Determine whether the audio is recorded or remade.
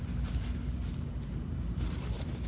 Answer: recorded